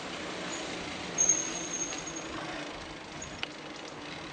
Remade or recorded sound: recorded